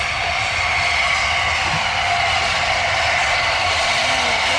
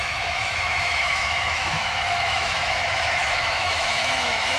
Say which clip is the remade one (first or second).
second